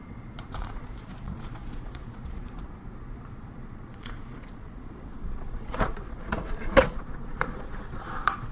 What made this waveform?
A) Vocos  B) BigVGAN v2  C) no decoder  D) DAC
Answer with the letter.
A